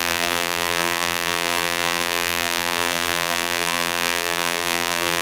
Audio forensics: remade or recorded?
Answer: remade